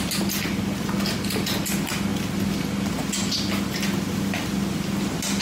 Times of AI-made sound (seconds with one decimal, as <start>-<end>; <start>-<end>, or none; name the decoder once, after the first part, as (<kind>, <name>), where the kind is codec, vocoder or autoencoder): none